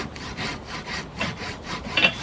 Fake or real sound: fake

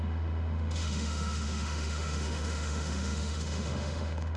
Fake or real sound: fake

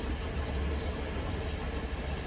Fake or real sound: real